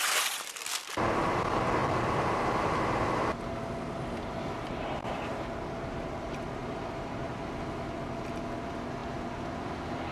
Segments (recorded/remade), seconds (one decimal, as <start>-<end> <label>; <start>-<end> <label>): 0.0-10.1 recorded